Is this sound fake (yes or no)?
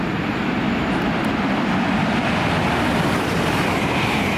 yes